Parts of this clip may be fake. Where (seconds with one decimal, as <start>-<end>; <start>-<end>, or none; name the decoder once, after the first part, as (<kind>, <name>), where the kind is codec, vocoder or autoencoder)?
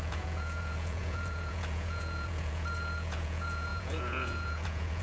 0.0-5.0 (vocoder, Vocos)